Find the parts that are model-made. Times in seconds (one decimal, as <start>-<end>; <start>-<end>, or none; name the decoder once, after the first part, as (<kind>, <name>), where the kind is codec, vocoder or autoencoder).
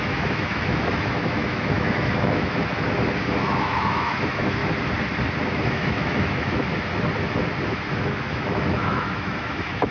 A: 0.0-2.5 (autoencoder, DAC-VAE); 3.4-4.6; 5.4-6.7; 8.0-9.9